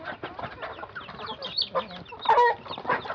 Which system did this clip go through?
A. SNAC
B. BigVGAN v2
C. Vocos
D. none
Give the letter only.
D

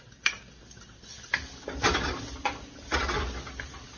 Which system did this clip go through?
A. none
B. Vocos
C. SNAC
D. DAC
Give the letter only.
A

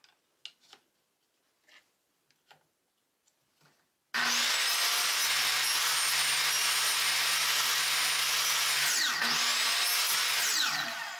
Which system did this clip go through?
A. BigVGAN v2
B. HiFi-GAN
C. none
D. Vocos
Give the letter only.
C